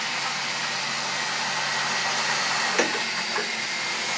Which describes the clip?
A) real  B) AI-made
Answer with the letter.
A